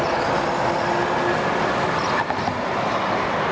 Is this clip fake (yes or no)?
no